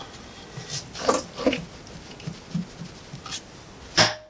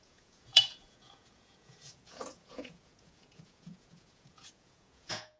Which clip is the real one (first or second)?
first